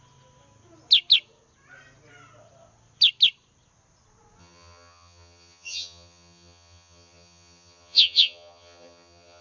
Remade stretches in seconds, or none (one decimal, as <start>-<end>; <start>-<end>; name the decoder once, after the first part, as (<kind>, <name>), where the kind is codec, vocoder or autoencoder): 4.4-9.4 (vocoder, HiFi-GAN)